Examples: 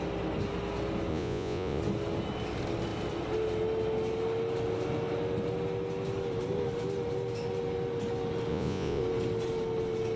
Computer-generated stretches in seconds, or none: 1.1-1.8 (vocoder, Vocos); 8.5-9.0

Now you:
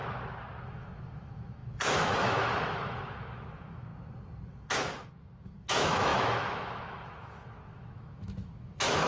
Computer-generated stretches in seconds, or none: 0.7-3.9 (autoencoder, DAC-VAE); 4.5-9.1